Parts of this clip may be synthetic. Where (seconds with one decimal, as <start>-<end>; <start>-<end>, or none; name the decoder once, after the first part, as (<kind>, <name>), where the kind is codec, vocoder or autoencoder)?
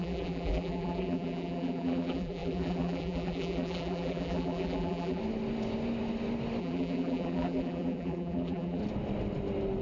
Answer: 0.0-5.2 (vocoder, BigVGAN v2); 6.6-8.8